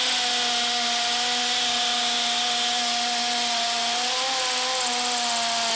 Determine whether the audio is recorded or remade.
recorded